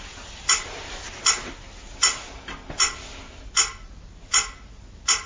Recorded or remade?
recorded